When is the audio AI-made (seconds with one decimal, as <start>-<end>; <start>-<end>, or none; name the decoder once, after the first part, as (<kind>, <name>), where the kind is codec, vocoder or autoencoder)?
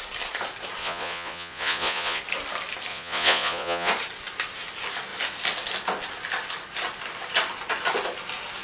0.8-2.2 (vocoder, Vocos); 2.9-3.9